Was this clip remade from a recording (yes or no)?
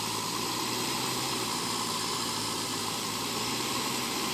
yes